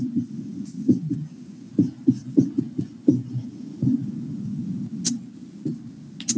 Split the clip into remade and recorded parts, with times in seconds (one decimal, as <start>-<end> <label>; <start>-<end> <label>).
0.0-4.6 remade; 4.6-6.4 recorded